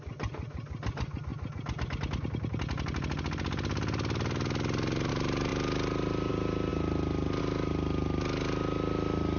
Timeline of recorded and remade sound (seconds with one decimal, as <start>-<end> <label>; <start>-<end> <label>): 0.0-9.4 recorded